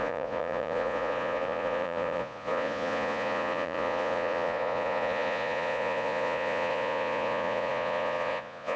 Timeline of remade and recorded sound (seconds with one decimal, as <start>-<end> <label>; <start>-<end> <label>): 0.0-8.8 remade